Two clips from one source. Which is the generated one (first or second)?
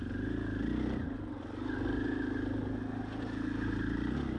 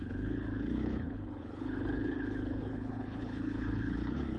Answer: second